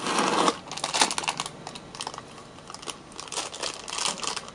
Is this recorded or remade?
recorded